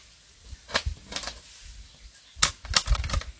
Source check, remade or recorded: recorded